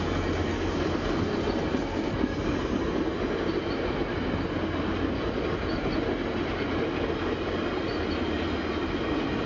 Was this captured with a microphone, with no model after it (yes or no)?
yes